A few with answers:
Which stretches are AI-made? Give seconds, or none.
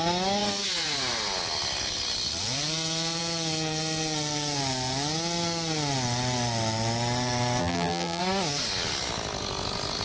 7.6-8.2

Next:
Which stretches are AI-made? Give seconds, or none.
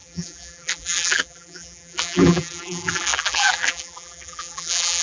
0.0-5.0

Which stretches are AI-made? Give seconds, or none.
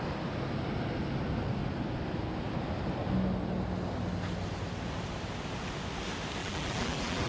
6.4-7.3